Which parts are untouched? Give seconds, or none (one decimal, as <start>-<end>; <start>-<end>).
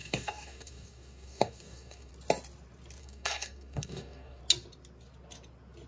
2.1-3.0; 4.4-5.9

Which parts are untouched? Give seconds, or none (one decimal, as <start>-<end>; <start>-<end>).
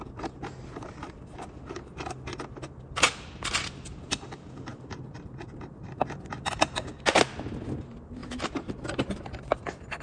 0.0-10.0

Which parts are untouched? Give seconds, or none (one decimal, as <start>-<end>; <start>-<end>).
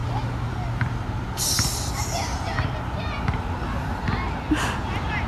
0.0-5.3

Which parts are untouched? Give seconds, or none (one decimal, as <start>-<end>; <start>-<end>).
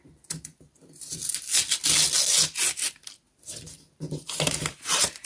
1.2-3.5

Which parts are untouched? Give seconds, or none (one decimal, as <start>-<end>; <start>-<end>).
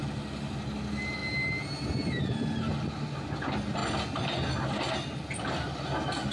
0.0-6.3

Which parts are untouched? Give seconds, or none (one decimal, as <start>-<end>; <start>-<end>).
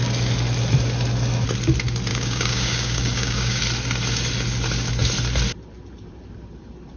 0.0-2.1; 3.6-7.0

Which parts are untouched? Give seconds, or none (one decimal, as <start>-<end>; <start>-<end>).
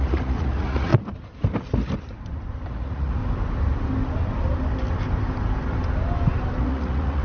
0.9-2.7; 3.2-6.6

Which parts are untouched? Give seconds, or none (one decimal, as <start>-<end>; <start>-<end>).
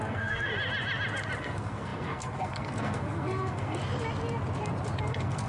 0.5-1.4; 3.8-5.1